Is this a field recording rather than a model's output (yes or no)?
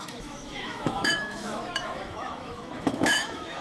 no